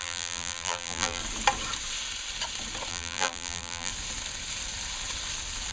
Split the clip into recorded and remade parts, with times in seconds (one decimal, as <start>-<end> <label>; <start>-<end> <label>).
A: 0.0-1.2 remade; 1.2-2.9 recorded; 2.9-3.9 remade; 3.9-5.7 recorded

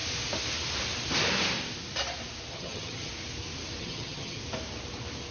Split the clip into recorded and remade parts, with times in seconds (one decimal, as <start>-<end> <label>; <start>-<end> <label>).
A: 0.0-2.5 recorded; 2.5-3.1 remade; 3.1-3.8 recorded; 3.8-4.4 remade; 4.4-5.3 recorded

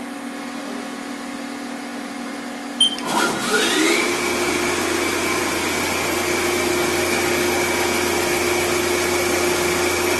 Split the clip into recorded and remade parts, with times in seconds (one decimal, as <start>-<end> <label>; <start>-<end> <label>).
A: 0.0-10.2 recorded

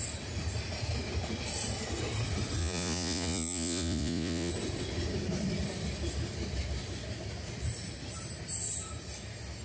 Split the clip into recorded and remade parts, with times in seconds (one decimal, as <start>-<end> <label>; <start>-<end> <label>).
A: 0.0-2.6 recorded; 2.6-4.5 remade; 4.5-9.6 recorded

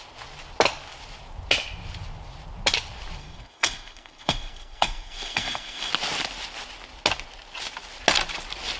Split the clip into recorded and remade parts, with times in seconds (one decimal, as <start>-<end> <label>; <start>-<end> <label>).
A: 0.0-3.2 recorded; 3.2-5.9 remade; 5.9-8.8 recorded